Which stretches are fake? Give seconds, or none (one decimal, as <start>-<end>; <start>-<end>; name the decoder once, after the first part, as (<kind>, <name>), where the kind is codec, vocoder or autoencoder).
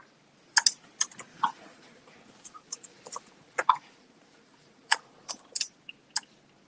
1.3-5.3 (vocoder, Vocos)